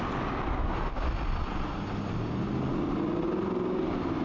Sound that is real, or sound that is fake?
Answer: real